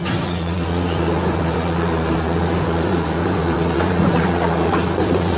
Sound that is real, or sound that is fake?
fake